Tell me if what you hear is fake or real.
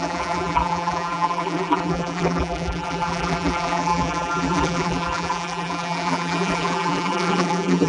fake